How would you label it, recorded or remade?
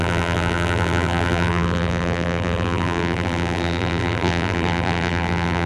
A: remade